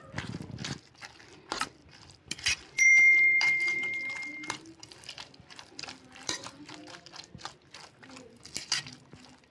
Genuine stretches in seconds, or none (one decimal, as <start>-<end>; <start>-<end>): 0.0-1.8; 6.6-9.5